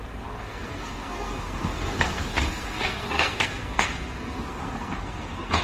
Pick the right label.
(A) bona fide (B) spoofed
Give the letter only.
B